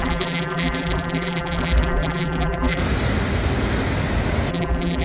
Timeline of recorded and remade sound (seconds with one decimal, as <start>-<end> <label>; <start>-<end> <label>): 0.0-2.8 remade; 2.8-4.5 recorded; 4.5-5.0 remade